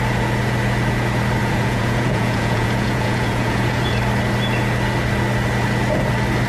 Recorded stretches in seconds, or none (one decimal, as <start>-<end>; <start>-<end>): 0.0-1.4; 4.0-6.5